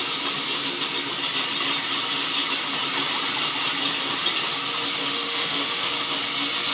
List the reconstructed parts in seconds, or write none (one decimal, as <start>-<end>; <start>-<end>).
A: 5.0-5.9